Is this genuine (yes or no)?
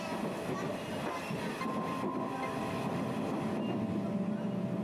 yes